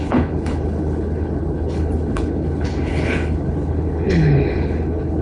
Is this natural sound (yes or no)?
no